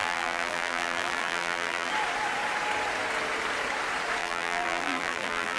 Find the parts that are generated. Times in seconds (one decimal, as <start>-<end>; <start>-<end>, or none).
0.0-1.9; 4.2-5.6